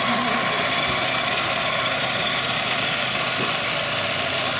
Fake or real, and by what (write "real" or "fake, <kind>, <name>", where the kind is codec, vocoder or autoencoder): real